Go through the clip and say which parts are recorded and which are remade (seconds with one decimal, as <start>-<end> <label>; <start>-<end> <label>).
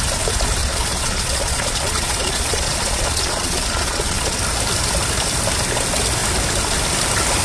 0.0-0.6 recorded; 0.6-4.4 remade; 4.4-7.4 recorded